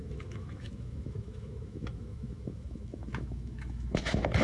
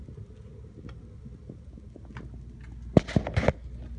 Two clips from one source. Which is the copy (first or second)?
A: first